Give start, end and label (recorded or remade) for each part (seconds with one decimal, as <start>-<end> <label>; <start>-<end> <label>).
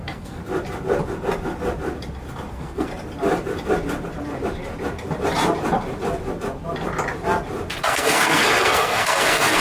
0.0-0.4 remade; 0.4-2.5 recorded; 2.5-2.9 remade; 2.9-7.8 recorded; 7.8-9.6 remade